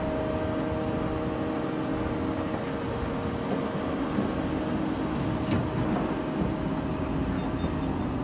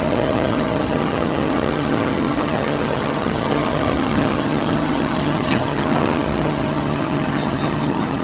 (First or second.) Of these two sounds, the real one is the first